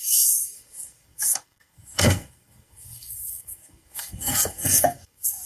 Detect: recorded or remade remade